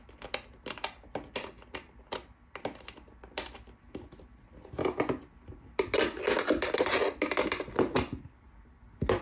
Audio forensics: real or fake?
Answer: real